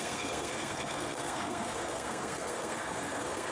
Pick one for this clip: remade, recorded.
remade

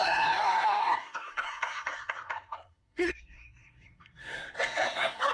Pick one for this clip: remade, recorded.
remade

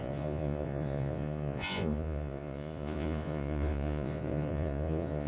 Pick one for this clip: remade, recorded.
remade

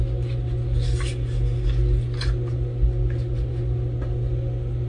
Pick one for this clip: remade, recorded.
recorded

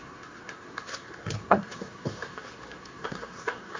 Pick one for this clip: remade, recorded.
remade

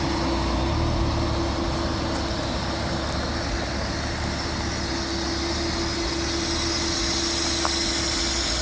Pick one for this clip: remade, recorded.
recorded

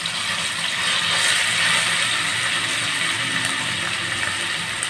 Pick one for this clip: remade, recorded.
recorded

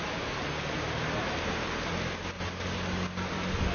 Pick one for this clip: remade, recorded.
recorded